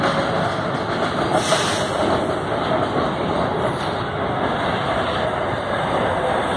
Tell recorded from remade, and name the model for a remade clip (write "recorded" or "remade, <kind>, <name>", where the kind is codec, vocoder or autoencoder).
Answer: recorded